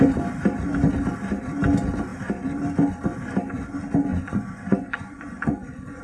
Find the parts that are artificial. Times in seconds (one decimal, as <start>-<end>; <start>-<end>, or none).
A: 4.1-6.0